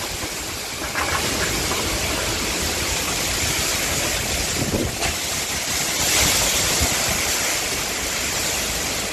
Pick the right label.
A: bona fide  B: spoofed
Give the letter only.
A